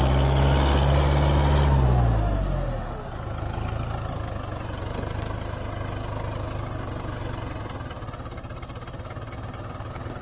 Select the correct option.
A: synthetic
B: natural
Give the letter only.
B